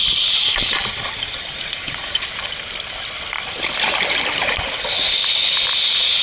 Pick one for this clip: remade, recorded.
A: remade